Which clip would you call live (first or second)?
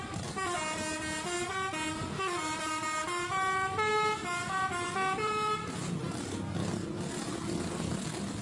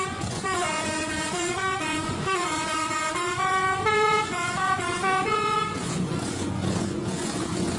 first